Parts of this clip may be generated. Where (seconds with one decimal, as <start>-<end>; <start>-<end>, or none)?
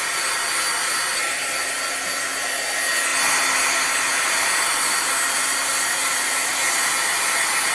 none